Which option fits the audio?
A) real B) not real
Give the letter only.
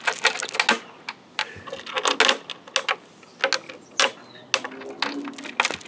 A